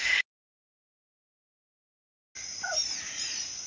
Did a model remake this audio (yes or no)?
no